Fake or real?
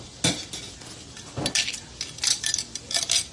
real